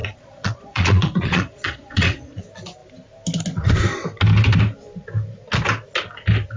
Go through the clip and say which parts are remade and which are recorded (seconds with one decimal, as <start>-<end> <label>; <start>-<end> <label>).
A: 0.0-2.4 remade; 2.4-6.6 recorded